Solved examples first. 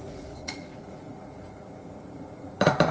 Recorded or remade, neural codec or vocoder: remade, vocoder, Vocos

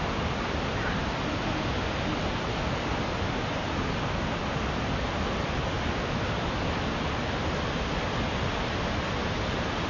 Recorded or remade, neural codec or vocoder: recorded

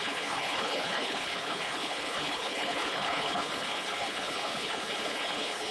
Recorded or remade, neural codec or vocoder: remade, codec, HILCodec